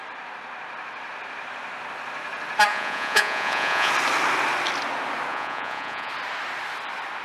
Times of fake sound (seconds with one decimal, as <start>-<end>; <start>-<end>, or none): 2.7-3.9; 5.3-6.1